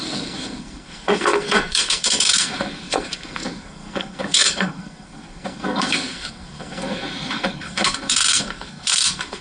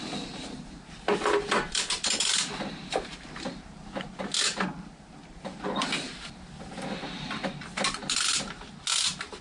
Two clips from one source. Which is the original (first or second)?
second